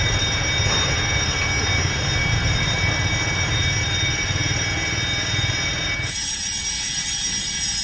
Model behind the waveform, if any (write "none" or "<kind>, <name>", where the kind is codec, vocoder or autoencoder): none